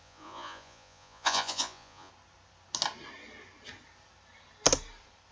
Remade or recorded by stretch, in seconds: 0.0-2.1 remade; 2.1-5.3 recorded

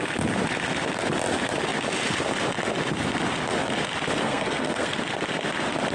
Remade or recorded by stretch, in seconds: 0.0-4.2 recorded; 4.2-5.0 remade; 5.0-5.9 recorded

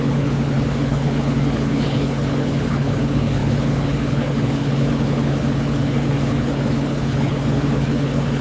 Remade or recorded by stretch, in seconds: 0.0-8.4 remade

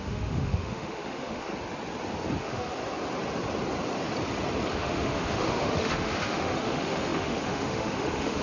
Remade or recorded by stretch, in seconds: 0.0-1.5 remade; 1.5-2.4 recorded; 2.4-2.8 remade; 2.8-4.7 recorded; 4.7-8.4 remade

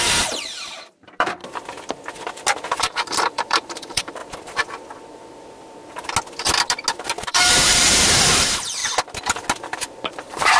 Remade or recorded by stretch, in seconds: 0.0-1.4 remade; 1.4-2.7 recorded; 2.7-4.2 remade; 4.2-7.3 recorded; 7.3-8.8 remade; 8.8-10.1 recorded; 10.1-10.6 remade

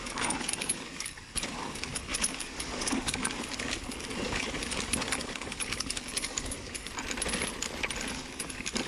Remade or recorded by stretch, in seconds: 0.0-6.9 remade; 6.9-8.1 recorded; 8.1-8.9 remade

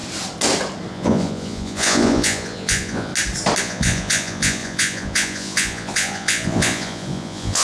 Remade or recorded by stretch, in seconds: 0.0-0.9 recorded; 0.9-3.1 remade; 3.1-3.6 recorded; 3.6-7.6 remade